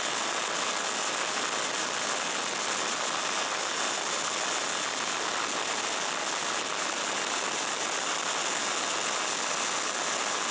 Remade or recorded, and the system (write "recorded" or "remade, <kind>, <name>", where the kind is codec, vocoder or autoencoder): recorded